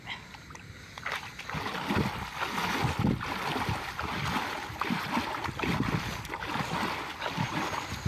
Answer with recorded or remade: recorded